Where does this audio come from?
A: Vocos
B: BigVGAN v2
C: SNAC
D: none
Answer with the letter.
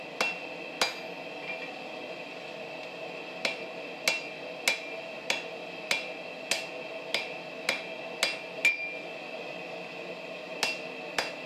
D